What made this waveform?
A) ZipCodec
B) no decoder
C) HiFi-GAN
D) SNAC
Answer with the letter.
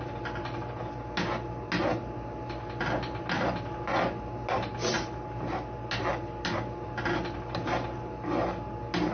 B